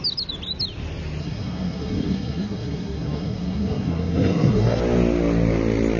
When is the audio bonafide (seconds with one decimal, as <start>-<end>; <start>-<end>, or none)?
0.0-1.2; 4.8-6.0